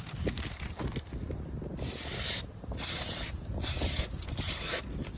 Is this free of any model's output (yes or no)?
yes